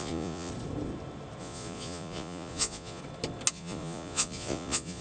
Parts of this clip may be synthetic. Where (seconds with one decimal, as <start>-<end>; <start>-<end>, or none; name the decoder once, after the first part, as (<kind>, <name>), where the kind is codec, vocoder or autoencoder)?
0.0-0.5 (vocoder, Vocos); 1.4-3.0; 3.5-5.0

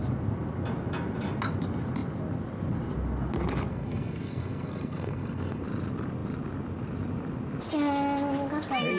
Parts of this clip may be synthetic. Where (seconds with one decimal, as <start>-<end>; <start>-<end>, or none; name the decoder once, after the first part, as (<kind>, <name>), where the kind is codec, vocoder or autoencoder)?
3.7-5.6 (codec, SNAC)

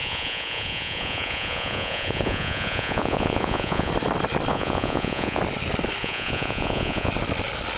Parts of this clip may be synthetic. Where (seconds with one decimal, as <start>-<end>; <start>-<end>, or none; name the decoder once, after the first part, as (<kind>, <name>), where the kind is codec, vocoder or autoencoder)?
0.0-3.9 (vocoder, Vocos); 4.5-5.4; 6.0-7.1

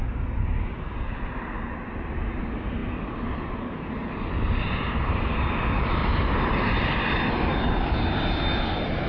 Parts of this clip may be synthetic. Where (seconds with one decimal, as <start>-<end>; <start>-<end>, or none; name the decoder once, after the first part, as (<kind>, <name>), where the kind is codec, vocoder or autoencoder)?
6.0-7.2 (vocoder, BigVGAN v2)

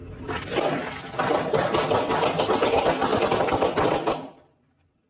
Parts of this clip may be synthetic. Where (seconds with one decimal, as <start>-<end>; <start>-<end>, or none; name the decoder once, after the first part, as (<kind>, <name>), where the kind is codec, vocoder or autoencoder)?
0.0-2.4 (vocoder, BigVGAN v2); 3.1-3.9

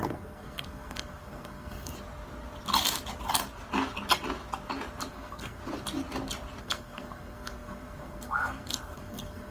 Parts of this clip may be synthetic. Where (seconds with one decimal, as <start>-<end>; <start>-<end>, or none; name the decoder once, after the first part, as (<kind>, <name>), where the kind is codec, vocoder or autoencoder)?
0.0-1.9 (codec, SNAC); 5.1-5.6; 6.6-9.5